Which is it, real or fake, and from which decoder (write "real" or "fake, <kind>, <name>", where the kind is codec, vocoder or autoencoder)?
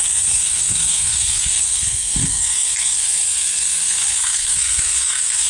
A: fake, codec, SNAC